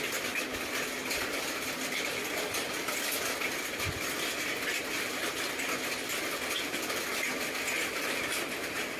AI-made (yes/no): no